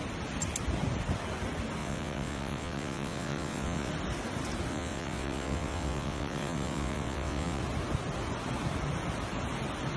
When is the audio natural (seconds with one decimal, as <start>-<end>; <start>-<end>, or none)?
0.0-1.8; 3.9-4.7; 7.6-10.0